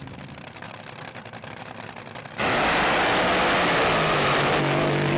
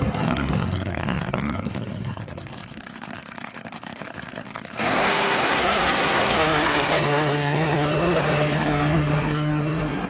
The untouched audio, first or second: first